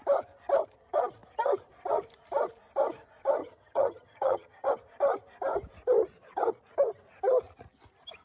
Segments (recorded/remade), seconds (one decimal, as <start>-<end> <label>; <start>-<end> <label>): 0.0-3.4 recorded; 3.4-4.7 remade; 4.7-8.2 recorded